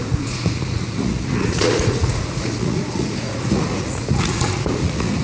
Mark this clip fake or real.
fake